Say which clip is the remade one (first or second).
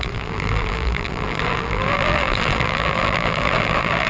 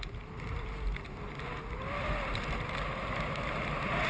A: first